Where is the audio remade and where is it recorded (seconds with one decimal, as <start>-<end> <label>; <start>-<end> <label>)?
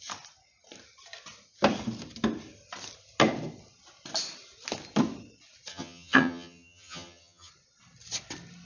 0.0-5.7 recorded; 5.7-7.5 remade; 7.5-8.7 recorded